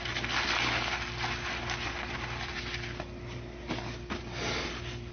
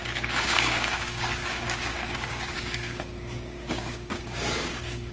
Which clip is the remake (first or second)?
second